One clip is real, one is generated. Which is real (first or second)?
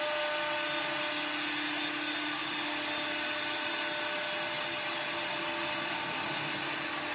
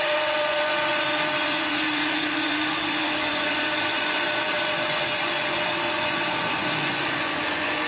first